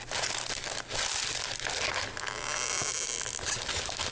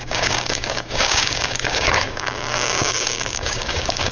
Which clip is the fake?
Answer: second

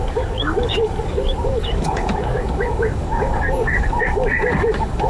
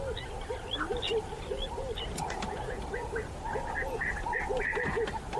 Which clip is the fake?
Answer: first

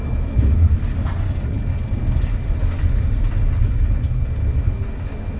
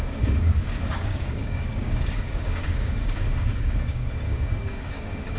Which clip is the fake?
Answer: second